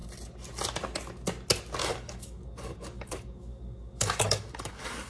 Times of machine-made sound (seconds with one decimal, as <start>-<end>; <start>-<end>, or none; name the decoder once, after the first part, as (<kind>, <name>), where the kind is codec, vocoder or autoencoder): 1.8-5.1 (codec, DAC)